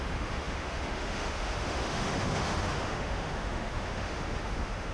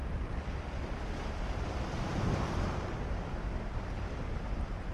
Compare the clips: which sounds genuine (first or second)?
second